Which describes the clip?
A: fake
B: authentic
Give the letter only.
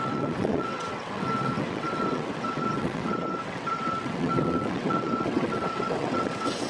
A